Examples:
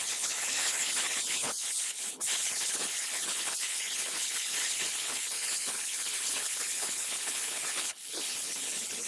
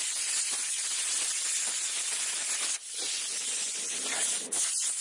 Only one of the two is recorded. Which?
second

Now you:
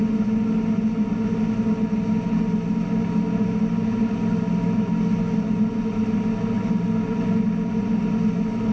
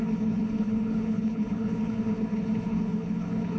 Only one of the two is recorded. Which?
first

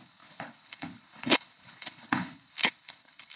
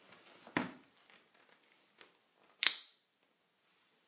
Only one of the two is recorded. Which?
second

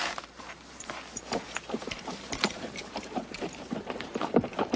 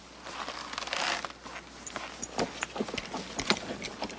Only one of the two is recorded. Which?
second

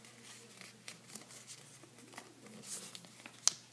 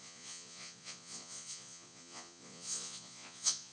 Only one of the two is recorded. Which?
first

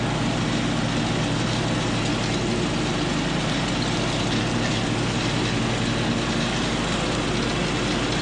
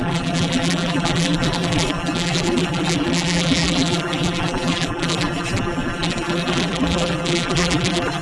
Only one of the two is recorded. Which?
first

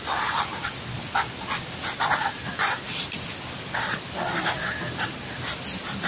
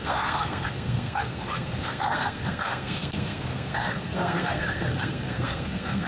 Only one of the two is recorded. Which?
first